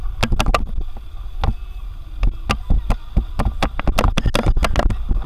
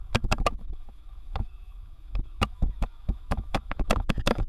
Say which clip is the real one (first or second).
first